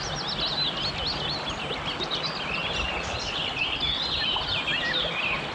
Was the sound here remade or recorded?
recorded